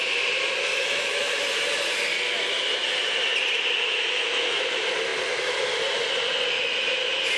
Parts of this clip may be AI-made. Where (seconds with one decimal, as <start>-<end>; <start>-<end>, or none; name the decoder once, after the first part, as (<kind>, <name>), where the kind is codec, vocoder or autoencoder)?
0.7-1.4 (autoencoder, DAC-VAE); 3.9-4.6